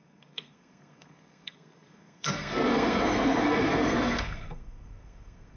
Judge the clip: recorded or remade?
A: remade